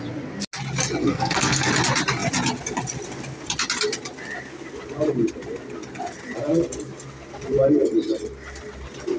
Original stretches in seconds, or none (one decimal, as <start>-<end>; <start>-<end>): 0.0-1.0; 1.7-9.2